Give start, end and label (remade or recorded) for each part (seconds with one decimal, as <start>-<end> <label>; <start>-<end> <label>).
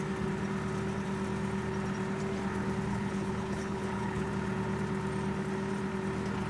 0.0-2.9 recorded; 2.9-4.3 remade; 4.3-6.5 recorded